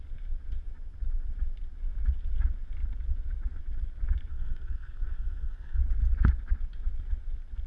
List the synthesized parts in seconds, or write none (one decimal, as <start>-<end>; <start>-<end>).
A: 4.3-5.8